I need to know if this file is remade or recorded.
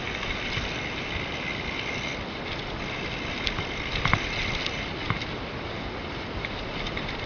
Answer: recorded